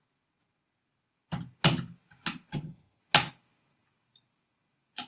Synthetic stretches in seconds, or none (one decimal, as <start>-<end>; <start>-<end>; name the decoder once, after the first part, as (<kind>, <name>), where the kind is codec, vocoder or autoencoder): 2.5-3.0 (vocoder, HiFi-GAN)